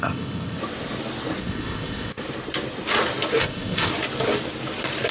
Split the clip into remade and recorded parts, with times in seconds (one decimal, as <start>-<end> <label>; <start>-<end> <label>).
0.0-0.6 remade; 0.6-1.4 recorded; 1.4-2.1 remade; 2.1-3.4 recorded; 3.4-3.9 remade; 3.9-5.1 recorded